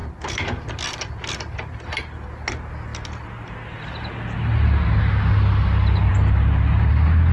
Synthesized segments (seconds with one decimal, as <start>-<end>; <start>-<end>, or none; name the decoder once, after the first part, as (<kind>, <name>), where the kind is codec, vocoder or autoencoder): none